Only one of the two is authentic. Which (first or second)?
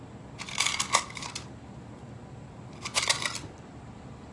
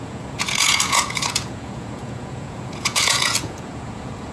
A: first